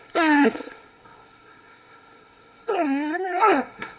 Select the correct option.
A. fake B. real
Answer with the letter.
A